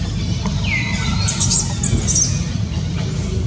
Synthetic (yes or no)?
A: no